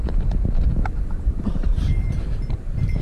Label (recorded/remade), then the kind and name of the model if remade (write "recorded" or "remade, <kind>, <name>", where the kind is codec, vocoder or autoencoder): remade, vocoder, BigVGAN v2